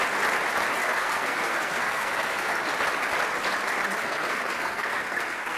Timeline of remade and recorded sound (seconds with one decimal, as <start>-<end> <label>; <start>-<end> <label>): 0.0-0.8 recorded; 0.8-2.6 remade; 2.6-4.0 recorded; 4.0-5.6 remade